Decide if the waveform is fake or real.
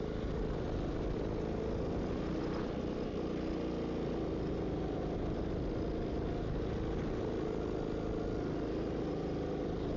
real